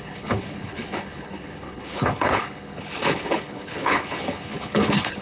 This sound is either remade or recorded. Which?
remade